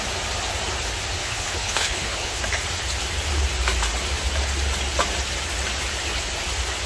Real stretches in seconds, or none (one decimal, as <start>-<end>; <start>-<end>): 0.0-1.2; 2.4-6.9